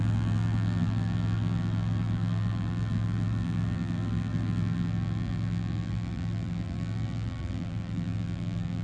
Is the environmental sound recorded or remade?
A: remade